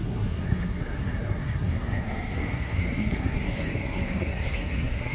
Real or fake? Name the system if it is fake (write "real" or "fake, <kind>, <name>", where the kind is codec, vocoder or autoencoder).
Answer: fake, codec, SNAC